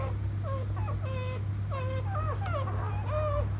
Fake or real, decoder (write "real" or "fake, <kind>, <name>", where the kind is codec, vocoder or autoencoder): real